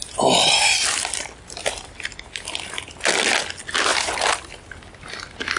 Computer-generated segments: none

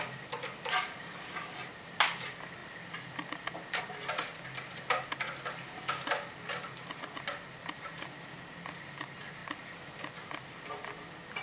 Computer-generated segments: none

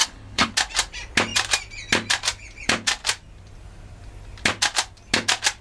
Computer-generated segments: 0.0-0.5 (codec, HILCodec)

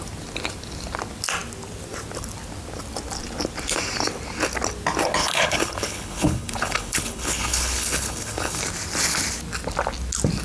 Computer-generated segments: 5.2-8.6 (codec, HILCodec)

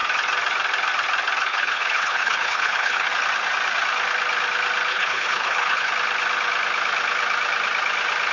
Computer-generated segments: 1.5-3.1 (codec, HILCodec); 4.9-5.9

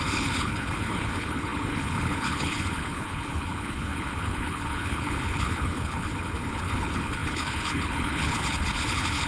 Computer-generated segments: 0.0-9.3 (codec, HILCodec)

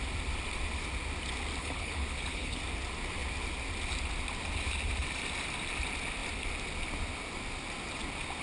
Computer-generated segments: 1.6-2.6 (codec, HILCodec)